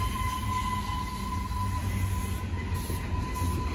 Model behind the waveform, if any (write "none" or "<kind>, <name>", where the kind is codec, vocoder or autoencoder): none